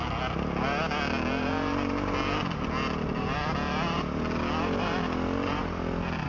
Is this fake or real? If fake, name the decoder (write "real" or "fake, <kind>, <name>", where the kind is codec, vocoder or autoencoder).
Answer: real